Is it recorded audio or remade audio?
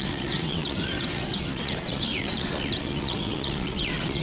remade